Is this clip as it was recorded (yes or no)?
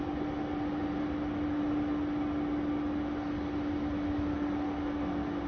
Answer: yes